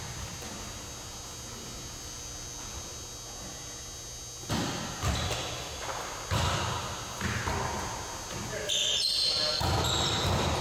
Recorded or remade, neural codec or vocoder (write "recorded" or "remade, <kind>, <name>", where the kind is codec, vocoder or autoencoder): recorded